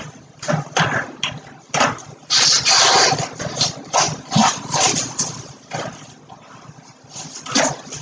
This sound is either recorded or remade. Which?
recorded